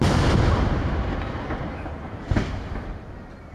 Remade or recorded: recorded